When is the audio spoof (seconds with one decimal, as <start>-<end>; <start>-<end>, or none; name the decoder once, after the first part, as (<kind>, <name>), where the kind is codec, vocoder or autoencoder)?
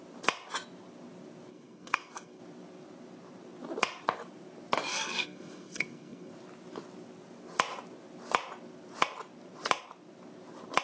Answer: 1.5-2.4 (codec, SNAC); 4.9-6.3